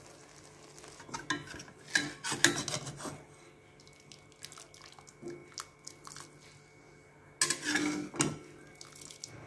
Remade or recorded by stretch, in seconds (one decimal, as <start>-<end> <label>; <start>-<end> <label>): 0.0-9.5 recorded

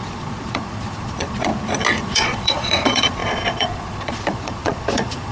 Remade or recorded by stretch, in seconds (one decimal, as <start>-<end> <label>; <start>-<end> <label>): 0.0-1.5 remade; 1.5-2.0 recorded; 2.0-5.3 remade

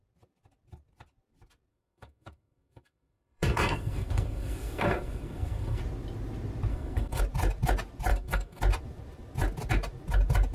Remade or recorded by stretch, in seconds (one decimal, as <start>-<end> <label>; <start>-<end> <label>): 0.0-1.7 recorded; 1.7-5.8 remade; 5.8-6.7 recorded; 6.7-7.2 remade; 7.2-8.1 recorded; 8.1-8.6 remade; 8.6-10.5 recorded

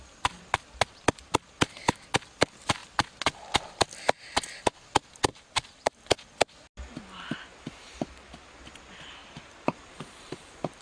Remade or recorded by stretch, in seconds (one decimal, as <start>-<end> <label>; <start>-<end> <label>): 0.0-5.3 recorded; 5.3-5.9 remade; 5.9-9.2 recorded; 9.2-10.8 remade

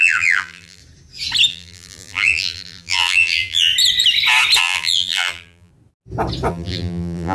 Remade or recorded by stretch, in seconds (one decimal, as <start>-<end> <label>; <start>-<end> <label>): 0.0-0.8 remade; 0.8-1.5 recorded; 1.5-3.7 remade; 3.7-4.6 recorded; 4.6-5.7 remade; 5.7-6.5 recorded; 6.5-7.3 remade

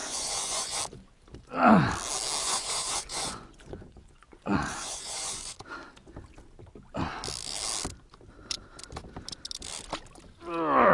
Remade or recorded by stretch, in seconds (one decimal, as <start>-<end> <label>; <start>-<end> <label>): 0.0-0.8 remade; 0.8-2.4 recorded; 2.4-5.6 remade; 5.6-10.9 recorded

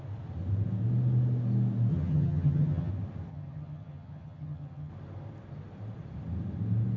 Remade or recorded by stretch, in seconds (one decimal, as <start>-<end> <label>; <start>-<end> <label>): 0.0-1.9 recorded; 1.9-2.9 remade; 2.9-3.3 recorded; 3.3-4.9 remade; 4.9-7.0 recorded

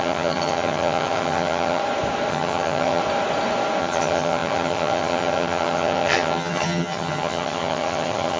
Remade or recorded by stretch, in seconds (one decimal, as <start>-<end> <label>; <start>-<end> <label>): 0.0-1.8 remade; 1.8-2.3 recorded; 2.3-3.0 remade; 3.0-3.8 recorded; 3.8-8.4 remade